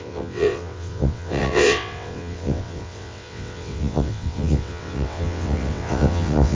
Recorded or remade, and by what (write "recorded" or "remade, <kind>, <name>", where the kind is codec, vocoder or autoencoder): remade, vocoder, WaveNeXt